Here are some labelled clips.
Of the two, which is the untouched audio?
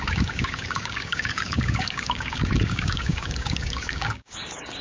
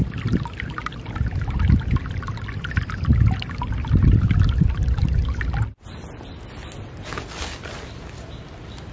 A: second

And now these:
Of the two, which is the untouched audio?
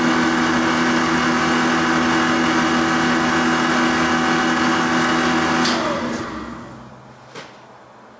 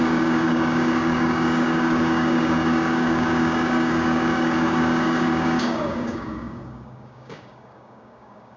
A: first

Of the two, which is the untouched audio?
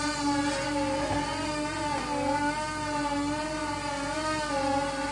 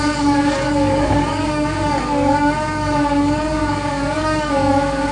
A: first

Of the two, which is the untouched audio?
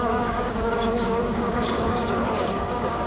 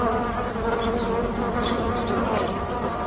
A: second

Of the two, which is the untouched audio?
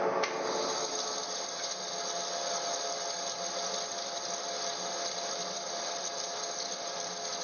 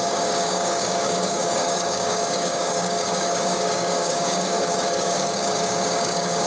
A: first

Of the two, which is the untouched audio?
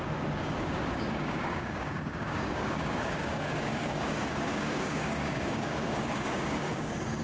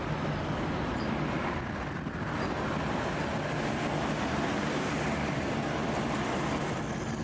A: second